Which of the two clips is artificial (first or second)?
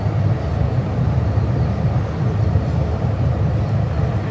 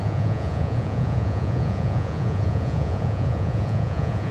second